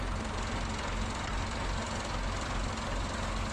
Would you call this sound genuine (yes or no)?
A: yes